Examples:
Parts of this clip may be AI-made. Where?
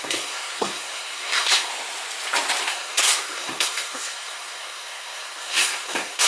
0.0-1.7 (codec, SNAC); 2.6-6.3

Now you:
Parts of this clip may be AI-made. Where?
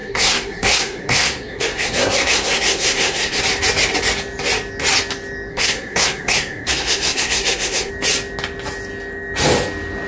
0.0-3.4 (codec, SNAC); 5.5-7.9